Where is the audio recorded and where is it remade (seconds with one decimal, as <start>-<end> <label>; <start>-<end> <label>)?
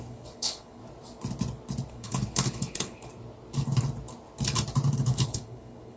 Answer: 0.0-0.8 remade; 0.8-1.9 recorded; 1.9-3.1 remade; 3.1-5.0 recorded; 5.0-6.0 remade